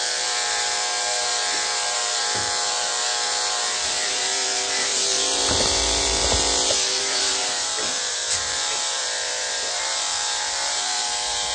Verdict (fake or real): fake